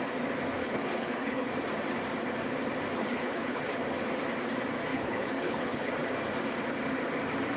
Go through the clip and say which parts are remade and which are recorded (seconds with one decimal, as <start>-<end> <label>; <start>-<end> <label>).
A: 0.0-0.6 recorded; 0.6-1.5 remade; 1.5-3.0 recorded; 3.0-3.6 remade; 3.6-4.9 recorded; 4.9-5.9 remade; 5.9-7.6 recorded